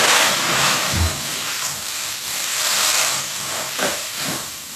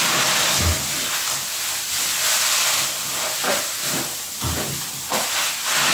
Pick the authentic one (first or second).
second